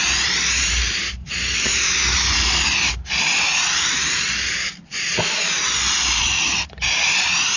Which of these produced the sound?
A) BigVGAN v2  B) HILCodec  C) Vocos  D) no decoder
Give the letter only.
A